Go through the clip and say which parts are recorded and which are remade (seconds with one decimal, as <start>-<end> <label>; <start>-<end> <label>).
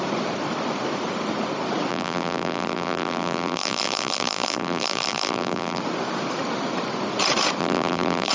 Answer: 0.0-1.9 recorded; 1.9-5.8 remade; 5.8-7.6 recorded; 7.6-8.3 remade